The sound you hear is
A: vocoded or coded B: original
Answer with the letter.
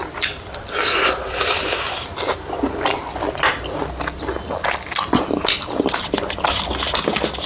B